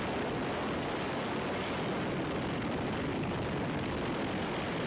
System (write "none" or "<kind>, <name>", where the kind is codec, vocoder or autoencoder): none